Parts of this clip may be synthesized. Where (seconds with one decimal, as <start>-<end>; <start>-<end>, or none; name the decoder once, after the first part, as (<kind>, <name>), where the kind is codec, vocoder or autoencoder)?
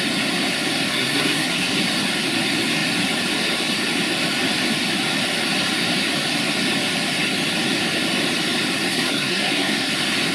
0.9-1.8 (codec, SNAC); 8.9-9.9